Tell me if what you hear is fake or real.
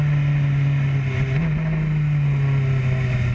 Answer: real